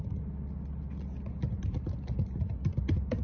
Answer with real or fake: real